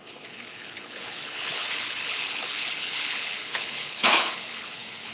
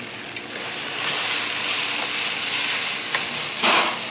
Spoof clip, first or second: first